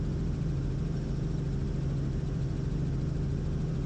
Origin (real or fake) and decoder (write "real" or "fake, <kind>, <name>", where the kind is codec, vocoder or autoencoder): real